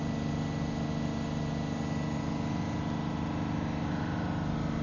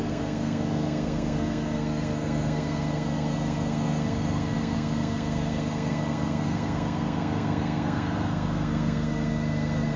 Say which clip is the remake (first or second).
second